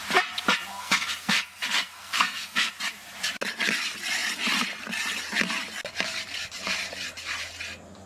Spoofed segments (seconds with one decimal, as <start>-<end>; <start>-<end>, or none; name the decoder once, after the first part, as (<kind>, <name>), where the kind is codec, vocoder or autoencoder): 0.7-2.7 (codec, SNAC)